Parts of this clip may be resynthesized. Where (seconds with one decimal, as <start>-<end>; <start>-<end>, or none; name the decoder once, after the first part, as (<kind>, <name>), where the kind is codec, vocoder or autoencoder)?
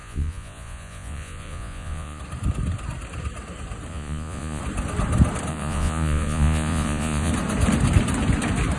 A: 0.0-2.2 (vocoder, Vocos); 3.9-4.6; 5.5-7.3